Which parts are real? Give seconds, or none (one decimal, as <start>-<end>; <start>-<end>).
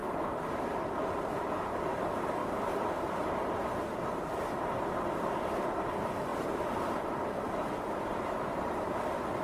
2.4-3.2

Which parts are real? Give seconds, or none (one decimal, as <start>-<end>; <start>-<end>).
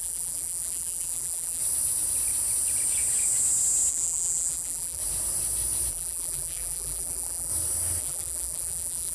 1.6-3.9; 5.0-5.9; 7.5-8.0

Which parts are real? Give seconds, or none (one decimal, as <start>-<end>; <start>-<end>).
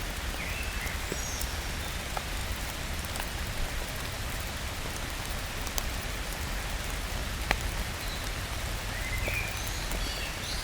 0.0-2.4; 6.8-7.2; 8.4-10.6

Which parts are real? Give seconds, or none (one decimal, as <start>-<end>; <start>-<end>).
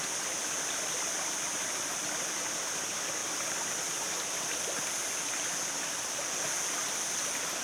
0.0-7.6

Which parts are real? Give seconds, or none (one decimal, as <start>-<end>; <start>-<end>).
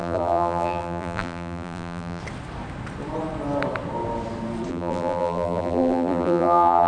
2.2-4.7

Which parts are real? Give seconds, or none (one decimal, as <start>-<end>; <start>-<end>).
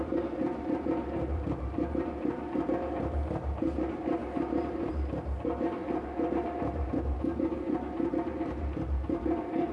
none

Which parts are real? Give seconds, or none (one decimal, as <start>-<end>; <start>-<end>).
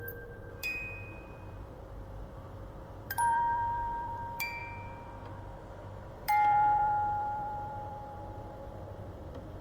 4.6-6.1